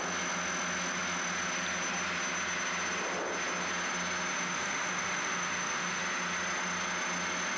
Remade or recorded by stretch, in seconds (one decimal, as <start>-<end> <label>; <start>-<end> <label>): 0.0-4.3 recorded; 4.3-6.0 remade; 6.0-7.6 recorded